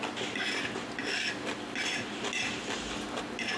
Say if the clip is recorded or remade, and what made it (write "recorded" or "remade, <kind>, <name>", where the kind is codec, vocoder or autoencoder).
recorded